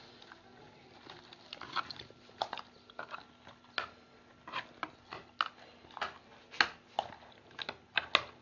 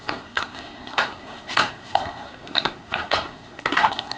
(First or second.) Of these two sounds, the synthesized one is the second